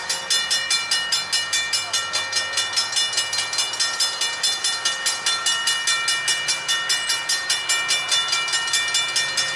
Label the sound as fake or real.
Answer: real